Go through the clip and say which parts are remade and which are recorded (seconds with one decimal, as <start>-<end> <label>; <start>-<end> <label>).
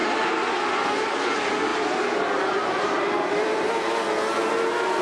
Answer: 0.0-0.6 remade; 0.6-1.7 recorded; 1.7-3.7 remade; 3.7-5.0 recorded